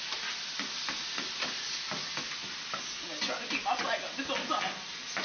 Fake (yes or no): no